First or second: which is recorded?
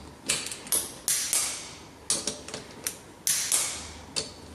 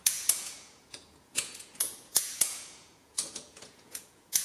first